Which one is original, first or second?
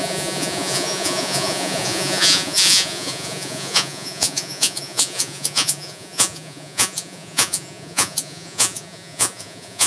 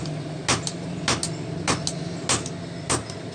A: second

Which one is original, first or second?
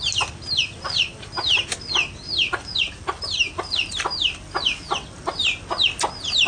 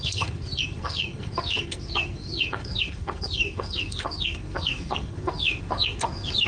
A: first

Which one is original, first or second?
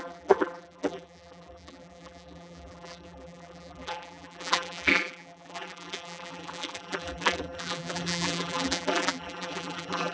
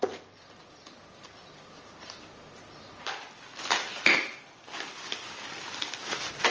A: second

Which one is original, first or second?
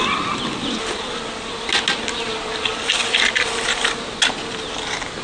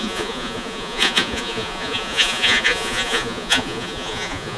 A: first